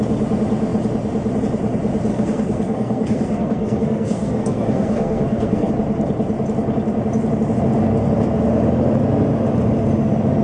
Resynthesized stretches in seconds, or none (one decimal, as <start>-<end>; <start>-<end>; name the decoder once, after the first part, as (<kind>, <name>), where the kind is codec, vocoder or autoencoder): 2.1-5.7 (codec, SNAC)